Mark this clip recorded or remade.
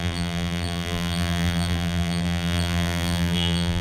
remade